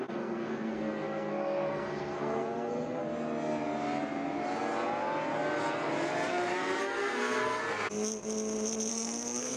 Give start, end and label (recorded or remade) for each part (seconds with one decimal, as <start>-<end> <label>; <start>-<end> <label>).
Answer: 0.0-3.0 remade; 3.0-6.8 recorded; 6.8-7.6 remade; 7.6-8.9 recorded; 8.9-9.6 remade